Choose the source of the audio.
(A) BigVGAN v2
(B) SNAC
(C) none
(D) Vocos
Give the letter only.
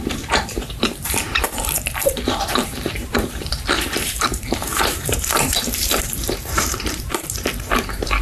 A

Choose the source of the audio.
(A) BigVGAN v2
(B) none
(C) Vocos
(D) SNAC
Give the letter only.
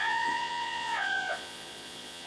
C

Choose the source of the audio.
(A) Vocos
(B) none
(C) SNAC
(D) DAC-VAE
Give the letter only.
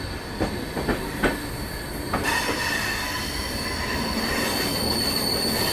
B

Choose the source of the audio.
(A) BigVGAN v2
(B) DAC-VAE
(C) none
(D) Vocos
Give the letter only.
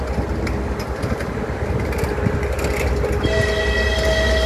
C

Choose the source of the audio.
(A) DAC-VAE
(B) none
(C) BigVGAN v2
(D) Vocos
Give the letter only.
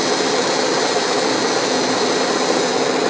B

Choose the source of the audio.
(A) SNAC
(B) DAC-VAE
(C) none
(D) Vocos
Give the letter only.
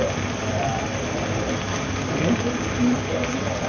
C